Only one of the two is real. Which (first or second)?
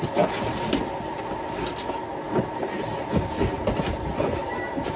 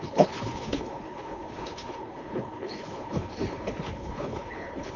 first